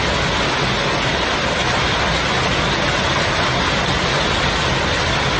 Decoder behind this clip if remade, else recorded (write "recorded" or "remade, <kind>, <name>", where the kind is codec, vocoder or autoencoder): recorded